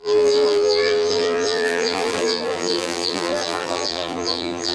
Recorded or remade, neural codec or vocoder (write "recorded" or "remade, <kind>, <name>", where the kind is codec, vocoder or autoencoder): remade, vocoder, BigVGAN v2